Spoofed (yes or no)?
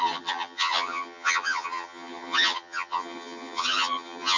yes